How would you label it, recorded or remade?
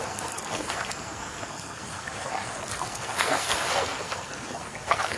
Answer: remade